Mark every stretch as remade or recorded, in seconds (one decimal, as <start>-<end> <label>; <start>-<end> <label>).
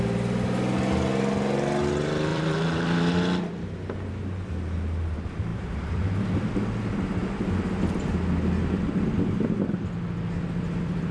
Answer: 0.0-2.3 recorded; 2.3-3.1 remade; 3.1-5.5 recorded; 5.5-6.5 remade; 6.5-11.1 recorded